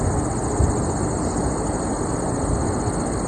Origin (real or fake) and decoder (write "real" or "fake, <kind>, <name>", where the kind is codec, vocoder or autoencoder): real